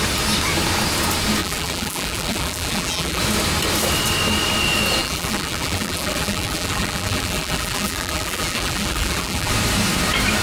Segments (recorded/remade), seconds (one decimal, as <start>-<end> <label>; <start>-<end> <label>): 0.0-1.4 recorded; 1.4-3.2 remade; 3.2-5.0 recorded; 5.0-9.5 remade; 9.5-10.4 recorded